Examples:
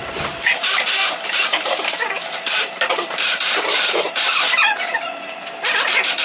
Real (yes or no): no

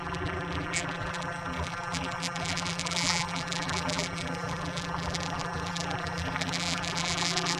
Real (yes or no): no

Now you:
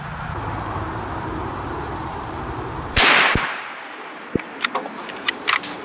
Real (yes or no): no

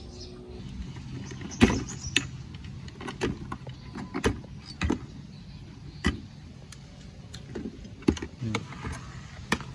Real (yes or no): yes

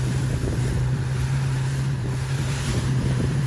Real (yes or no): no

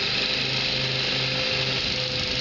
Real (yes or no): yes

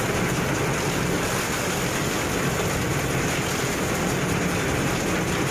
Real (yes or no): no